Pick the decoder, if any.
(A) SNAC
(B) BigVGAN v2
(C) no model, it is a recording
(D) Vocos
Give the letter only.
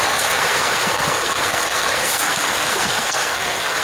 A